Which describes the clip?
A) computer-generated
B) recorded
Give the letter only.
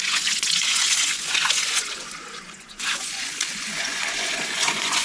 A